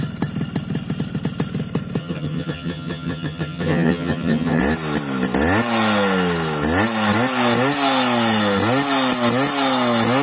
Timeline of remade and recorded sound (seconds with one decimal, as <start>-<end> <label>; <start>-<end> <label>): 0.0-2.0 recorded; 2.0-4.6 remade; 4.6-10.2 recorded